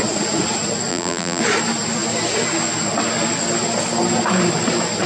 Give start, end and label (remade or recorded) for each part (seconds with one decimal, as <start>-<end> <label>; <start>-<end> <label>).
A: 0.0-0.9 recorded; 0.9-1.4 remade; 1.4-5.1 recorded